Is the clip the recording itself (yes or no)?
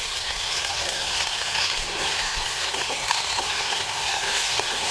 no